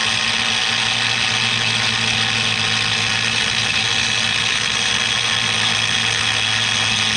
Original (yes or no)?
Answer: yes